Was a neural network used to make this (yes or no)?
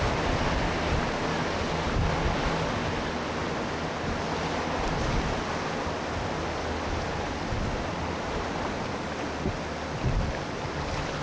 no